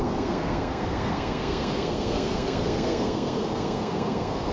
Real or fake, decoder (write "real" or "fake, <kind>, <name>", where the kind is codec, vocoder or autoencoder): fake, codec, SNAC